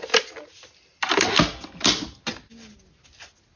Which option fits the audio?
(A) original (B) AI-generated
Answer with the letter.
A